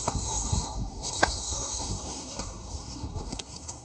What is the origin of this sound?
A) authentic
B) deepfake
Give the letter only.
B